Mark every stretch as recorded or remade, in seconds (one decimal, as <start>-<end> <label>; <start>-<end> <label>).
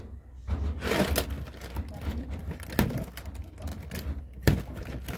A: 0.0-5.2 recorded